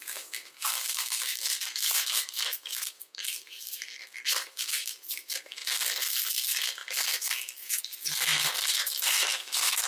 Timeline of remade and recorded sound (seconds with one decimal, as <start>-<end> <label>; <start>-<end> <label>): 0.0-9.9 remade